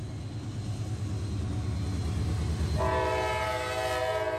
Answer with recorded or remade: recorded